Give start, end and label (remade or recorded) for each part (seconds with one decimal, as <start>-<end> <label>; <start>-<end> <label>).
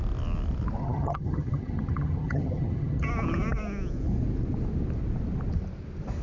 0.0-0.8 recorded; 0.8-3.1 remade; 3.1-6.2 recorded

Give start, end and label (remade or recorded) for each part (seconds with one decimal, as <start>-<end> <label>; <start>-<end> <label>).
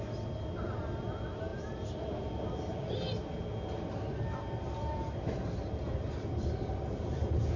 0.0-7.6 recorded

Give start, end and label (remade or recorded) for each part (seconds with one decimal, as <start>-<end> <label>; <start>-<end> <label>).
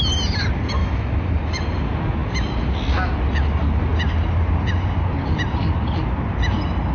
0.0-0.8 recorded; 0.8-1.6 remade; 1.6-6.9 recorded